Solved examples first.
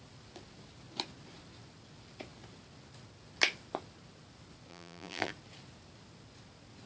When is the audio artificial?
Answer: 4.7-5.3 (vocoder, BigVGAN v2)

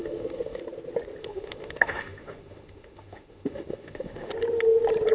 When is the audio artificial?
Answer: 0.0-0.6 (autoencoder, DAC-VAE); 1.2-4.3

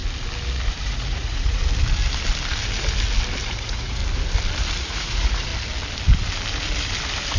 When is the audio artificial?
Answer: 0.8-1.6 (vocoder, Vocos); 3.5-4.0; 4.8-5.5

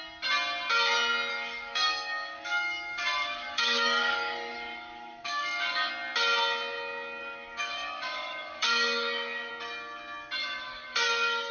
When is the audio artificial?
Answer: 1.3-5.9 (codec, DAC); 7.2-9.5; 10.4-11.5

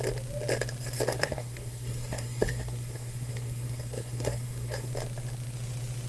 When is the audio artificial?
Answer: 1.2-4.9 (codec, SNAC)

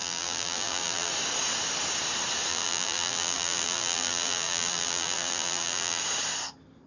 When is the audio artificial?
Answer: 0.0-1.1 (vocoder, BigVGAN v2); 2.5-6.0